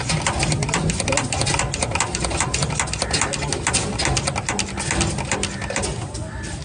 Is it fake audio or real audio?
real